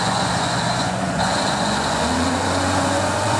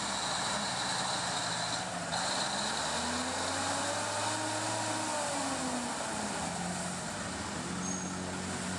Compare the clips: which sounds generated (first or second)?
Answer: first